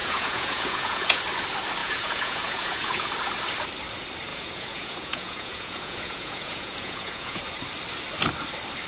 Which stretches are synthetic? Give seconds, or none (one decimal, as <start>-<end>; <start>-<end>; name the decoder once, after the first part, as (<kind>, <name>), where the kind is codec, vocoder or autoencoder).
0.0-1.2 (vocoder, Vocos); 1.8-3.1; 4.3-7.4